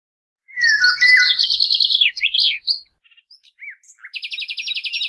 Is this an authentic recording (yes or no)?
yes